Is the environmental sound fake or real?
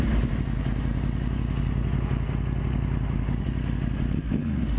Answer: real